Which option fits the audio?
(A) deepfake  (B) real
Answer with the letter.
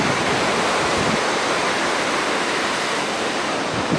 A